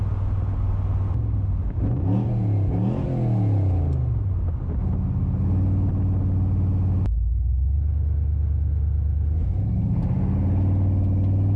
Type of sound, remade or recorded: recorded